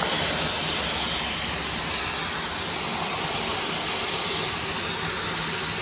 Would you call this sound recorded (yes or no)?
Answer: yes